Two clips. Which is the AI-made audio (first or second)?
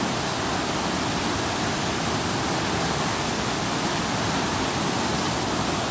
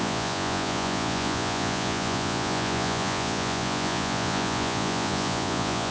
second